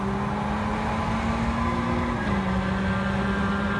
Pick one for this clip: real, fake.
real